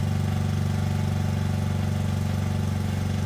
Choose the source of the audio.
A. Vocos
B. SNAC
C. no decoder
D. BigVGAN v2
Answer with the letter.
C